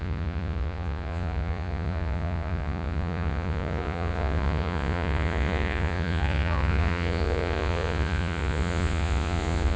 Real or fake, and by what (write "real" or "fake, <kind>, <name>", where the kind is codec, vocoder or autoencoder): fake, vocoder, Vocos